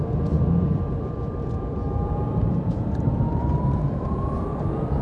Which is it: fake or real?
fake